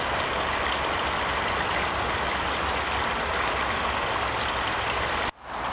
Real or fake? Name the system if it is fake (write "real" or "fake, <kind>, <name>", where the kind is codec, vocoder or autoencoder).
real